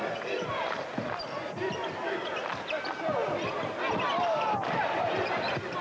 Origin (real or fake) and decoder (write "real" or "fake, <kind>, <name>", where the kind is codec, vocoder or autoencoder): real